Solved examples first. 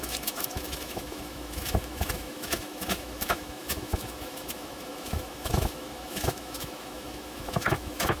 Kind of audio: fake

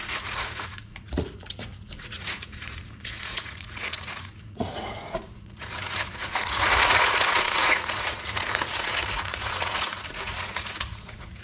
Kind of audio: fake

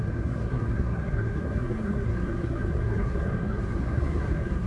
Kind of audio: fake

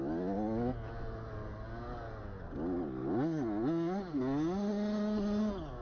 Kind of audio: real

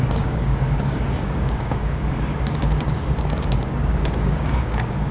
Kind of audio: fake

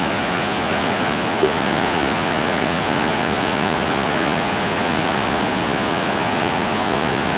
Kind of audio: fake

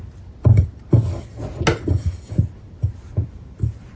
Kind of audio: real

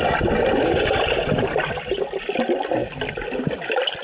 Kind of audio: real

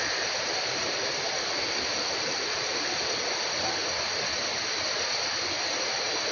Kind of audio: real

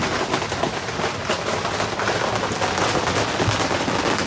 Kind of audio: real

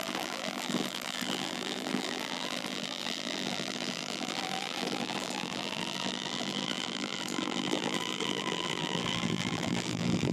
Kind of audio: fake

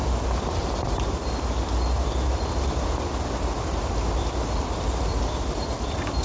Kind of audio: fake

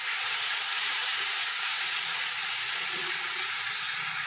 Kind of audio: fake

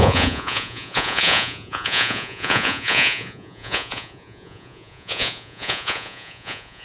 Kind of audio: fake